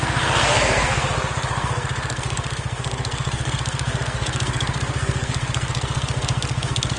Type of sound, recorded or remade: remade